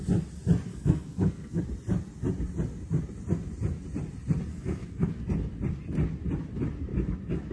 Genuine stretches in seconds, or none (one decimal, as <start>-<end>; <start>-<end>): 0.0-0.7; 1.6-4.5; 5.2-7.5